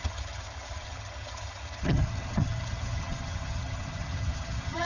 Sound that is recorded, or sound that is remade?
remade